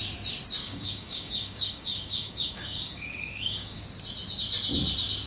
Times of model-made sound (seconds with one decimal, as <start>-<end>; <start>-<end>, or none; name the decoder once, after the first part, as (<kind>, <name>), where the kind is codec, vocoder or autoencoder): 0.6-3.8 (codec, DAC)

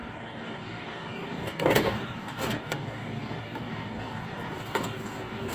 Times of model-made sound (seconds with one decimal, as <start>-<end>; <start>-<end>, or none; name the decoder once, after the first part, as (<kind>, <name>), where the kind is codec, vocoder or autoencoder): 0.0-5.5 (codec, DAC)

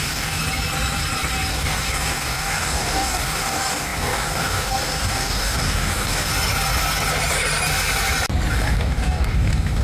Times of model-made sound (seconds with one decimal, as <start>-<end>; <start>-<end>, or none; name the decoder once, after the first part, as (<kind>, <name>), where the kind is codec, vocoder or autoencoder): 0.0-0.4 (codec, DAC); 1.5-6.3; 8.5-9.8

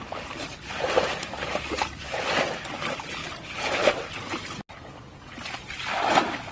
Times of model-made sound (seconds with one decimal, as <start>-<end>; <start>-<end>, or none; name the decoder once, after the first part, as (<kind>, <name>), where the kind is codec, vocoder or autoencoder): 1.2-1.8 (codec, DAC)

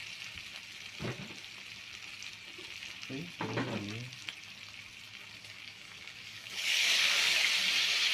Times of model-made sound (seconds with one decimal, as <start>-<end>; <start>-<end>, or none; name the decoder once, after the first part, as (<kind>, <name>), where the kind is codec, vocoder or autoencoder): 5.4-7.5 (codec, DAC)

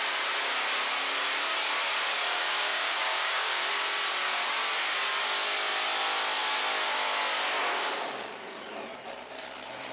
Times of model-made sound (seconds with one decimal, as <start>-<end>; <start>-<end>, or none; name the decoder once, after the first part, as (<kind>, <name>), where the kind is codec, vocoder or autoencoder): 2.3-3.7 (codec, DAC)

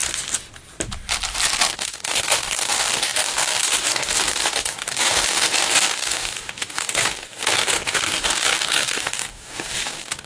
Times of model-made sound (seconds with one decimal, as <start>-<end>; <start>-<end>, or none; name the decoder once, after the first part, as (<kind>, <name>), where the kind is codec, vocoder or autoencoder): 1.7-10.3 (codec, DAC)